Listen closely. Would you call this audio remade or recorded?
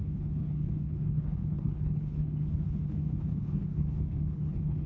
remade